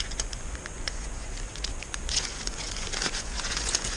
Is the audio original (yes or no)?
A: no